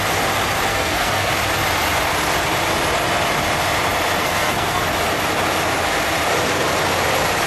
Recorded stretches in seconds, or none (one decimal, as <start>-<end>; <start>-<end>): 0.0-0.7; 1.3-4.2; 4.8-7.5